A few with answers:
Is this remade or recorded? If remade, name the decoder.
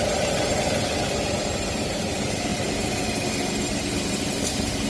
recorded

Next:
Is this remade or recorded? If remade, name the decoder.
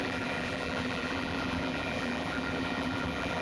remade, vocoder, BigVGAN v2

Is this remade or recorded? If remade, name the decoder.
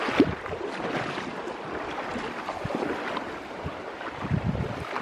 recorded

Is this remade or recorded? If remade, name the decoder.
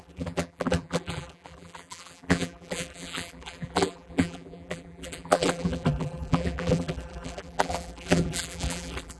remade, vocoder, BigVGAN v2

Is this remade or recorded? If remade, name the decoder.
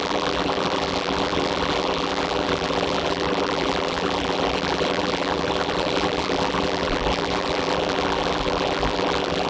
remade, vocoder, BigVGAN v2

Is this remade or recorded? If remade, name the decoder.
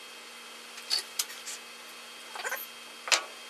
recorded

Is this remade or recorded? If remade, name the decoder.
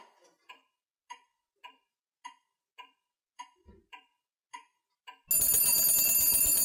recorded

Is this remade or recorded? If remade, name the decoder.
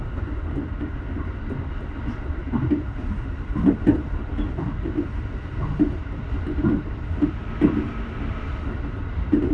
remade, vocoder, BigVGAN v2